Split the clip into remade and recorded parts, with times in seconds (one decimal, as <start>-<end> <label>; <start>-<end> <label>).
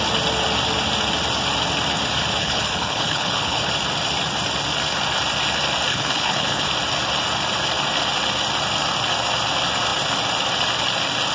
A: 0.0-2.4 recorded; 2.4-3.7 remade; 3.7-5.9 recorded; 5.9-6.7 remade; 6.7-11.3 recorded